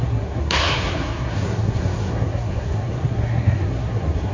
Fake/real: fake